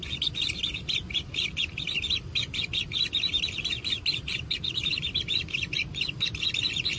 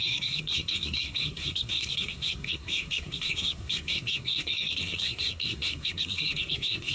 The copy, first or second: second